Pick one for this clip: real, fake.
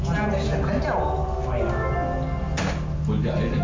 real